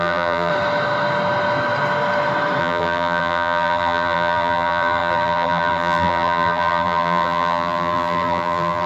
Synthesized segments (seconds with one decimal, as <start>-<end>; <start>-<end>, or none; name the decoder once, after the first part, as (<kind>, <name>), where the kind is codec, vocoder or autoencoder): 0.0-0.5 (vocoder, BigVGAN v2); 2.6-8.9